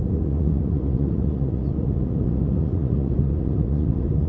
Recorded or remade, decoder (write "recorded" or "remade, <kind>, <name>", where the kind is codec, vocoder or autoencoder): remade, vocoder, Vocos